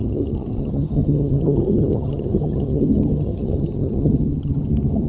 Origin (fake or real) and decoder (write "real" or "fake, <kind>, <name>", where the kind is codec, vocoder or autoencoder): fake, vocoder, HiFi-GAN